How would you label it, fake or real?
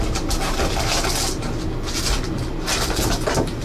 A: real